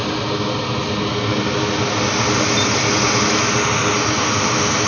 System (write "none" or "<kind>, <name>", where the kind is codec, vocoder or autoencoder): none